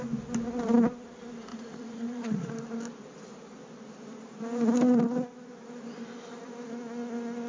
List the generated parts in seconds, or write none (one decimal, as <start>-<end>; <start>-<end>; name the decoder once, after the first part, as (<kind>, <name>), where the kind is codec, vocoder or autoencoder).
1.5-2.5 (vocoder, Vocos)